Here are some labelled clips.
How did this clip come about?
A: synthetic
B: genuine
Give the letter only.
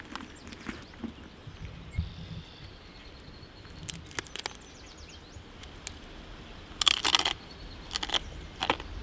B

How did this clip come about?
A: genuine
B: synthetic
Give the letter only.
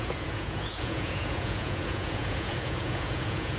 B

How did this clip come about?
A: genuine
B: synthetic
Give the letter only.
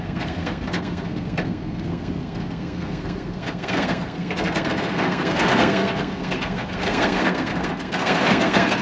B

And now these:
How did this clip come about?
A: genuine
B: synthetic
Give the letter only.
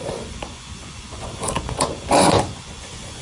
B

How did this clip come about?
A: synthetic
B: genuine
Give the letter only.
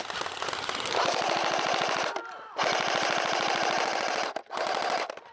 B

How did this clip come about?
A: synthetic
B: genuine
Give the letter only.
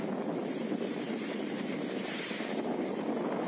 B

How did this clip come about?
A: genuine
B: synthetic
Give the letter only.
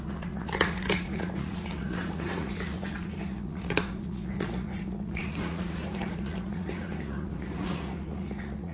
B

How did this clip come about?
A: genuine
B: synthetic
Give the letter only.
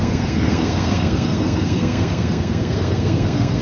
B